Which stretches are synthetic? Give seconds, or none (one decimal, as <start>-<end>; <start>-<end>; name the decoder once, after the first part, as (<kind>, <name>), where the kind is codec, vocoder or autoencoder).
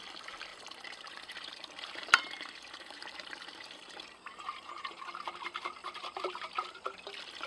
0.5-4.7 (vocoder, BigVGAN v2); 5.8-6.8